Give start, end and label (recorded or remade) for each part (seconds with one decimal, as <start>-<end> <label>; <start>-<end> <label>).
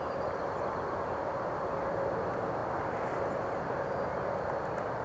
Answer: 0.0-5.0 recorded